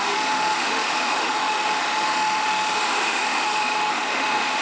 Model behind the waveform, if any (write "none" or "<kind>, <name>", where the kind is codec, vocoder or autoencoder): autoencoder, DAC-VAE